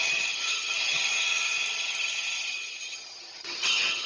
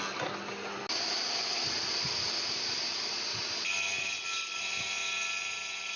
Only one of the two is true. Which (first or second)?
second